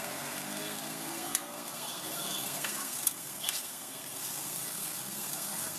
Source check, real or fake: fake